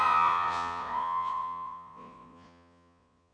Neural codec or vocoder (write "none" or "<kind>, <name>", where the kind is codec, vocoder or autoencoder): vocoder, Vocos